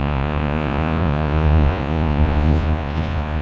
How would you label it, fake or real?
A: fake